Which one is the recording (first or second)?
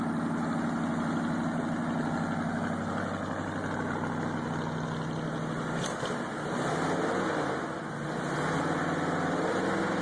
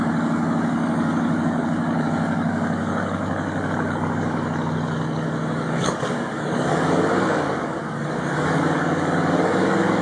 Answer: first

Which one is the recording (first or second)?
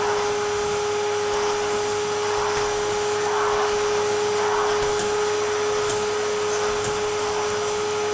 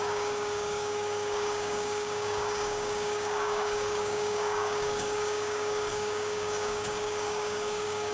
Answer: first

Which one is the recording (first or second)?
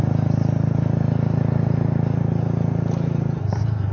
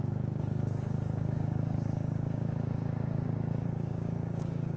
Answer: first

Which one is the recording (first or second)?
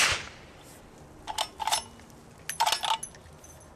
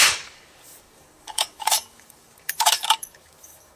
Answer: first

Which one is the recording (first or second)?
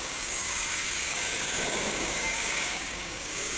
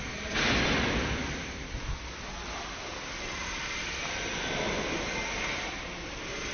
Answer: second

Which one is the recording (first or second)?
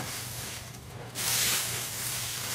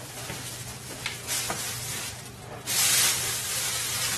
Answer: second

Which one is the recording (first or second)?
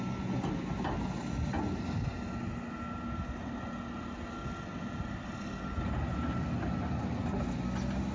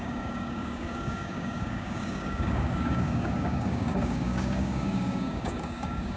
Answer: first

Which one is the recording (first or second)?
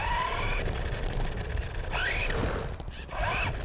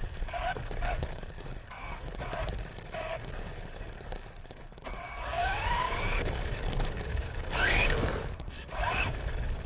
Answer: first